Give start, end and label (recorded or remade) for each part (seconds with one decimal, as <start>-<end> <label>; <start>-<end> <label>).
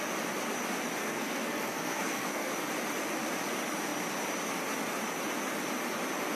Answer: 0.0-1.0 recorded; 1.0-2.5 remade; 2.5-6.4 recorded